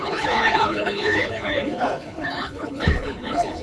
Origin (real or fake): fake